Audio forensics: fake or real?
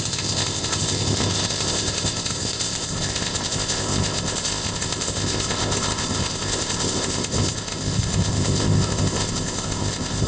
fake